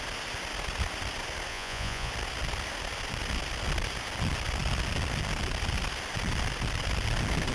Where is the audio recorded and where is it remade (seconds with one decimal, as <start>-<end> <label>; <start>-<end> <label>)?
0.0-1.5 recorded; 1.5-2.1 remade; 2.1-7.5 recorded